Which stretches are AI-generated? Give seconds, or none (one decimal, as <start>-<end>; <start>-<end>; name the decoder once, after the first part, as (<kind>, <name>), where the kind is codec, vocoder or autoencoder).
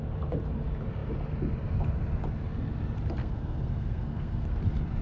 3.2-4.6 (codec, SNAC)